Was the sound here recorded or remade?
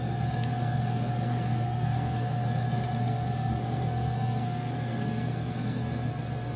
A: remade